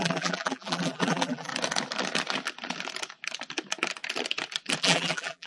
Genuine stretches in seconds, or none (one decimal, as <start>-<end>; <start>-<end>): 1.5-4.8